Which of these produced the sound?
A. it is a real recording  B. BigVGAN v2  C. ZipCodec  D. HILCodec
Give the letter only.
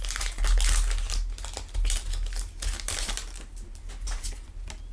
A